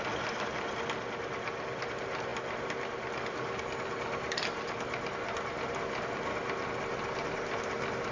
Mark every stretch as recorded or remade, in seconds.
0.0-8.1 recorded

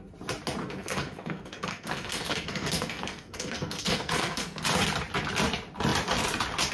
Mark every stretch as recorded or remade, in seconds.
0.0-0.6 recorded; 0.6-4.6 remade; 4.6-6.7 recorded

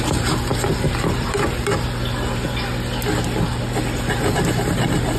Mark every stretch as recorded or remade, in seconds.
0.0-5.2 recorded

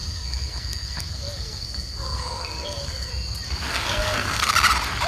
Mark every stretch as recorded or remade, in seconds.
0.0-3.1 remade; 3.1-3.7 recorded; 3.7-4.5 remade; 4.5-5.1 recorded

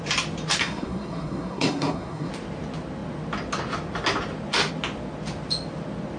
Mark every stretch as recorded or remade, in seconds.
0.0-0.6 recorded; 0.6-2.3 remade; 2.3-6.2 recorded

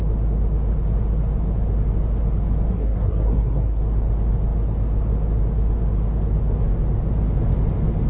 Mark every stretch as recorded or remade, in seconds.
0.0-2.7 recorded; 2.7-3.8 remade; 3.8-8.1 recorded

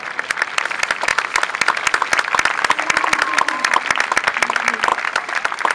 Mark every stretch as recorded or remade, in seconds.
0.0-5.7 recorded